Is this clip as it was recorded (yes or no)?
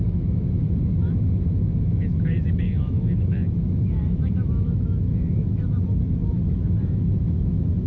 no